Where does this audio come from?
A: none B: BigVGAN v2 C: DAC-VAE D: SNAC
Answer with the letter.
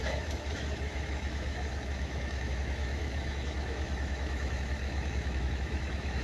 C